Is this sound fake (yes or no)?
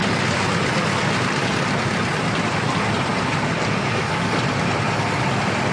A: no